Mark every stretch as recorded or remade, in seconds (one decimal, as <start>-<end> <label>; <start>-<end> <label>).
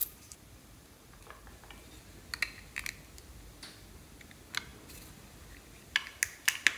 0.0-1.5 remade; 1.5-6.8 recorded